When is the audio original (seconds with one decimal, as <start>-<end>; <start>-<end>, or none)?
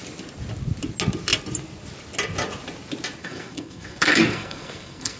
0.0-3.2